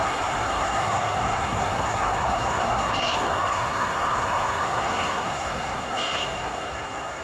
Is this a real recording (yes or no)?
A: no